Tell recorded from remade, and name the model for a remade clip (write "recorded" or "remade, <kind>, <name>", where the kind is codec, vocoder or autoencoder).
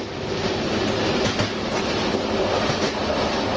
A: recorded